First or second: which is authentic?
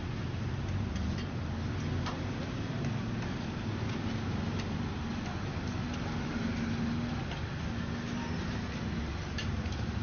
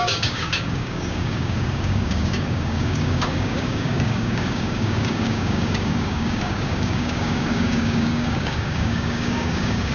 first